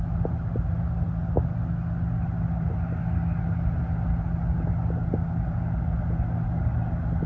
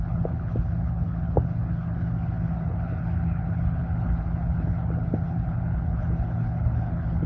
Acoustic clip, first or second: first